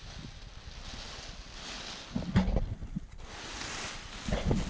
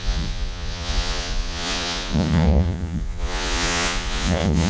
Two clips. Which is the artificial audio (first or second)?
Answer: second